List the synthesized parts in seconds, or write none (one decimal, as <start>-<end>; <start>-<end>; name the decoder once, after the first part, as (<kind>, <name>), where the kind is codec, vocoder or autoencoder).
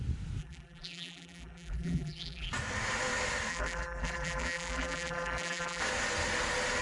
0.4-2.5 (vocoder, BigVGAN v2); 3.5-5.8